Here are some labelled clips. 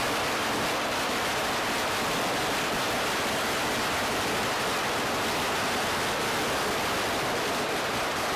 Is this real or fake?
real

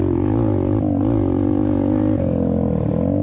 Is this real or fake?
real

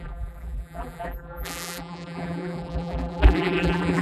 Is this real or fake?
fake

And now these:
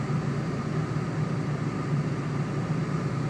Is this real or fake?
real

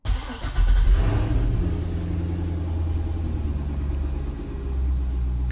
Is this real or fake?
real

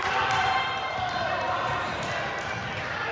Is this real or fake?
fake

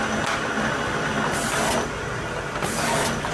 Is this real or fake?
real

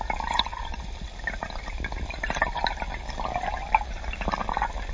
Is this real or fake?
real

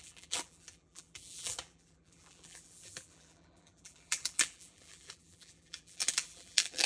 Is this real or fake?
fake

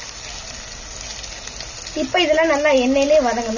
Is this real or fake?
real